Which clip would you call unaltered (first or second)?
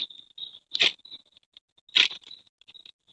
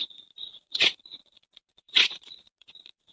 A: first